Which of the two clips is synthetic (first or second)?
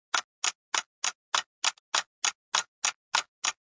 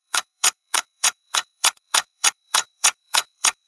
second